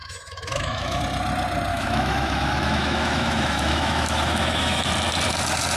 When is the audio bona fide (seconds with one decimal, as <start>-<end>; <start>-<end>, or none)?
1.0-1.7; 4.9-5.8